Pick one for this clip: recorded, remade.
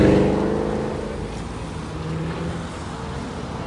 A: recorded